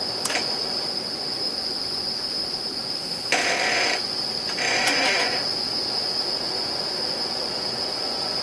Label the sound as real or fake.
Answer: fake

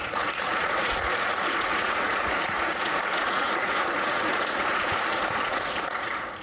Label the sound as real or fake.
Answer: fake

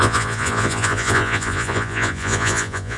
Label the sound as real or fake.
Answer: fake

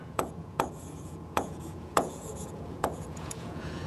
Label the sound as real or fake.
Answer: fake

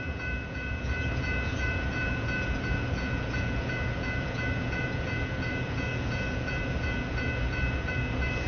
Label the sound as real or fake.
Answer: fake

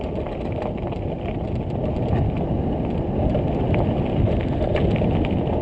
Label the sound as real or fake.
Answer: real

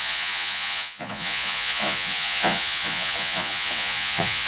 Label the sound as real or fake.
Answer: fake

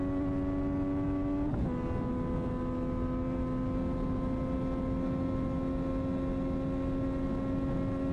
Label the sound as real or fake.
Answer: real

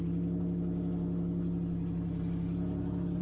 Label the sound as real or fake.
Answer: real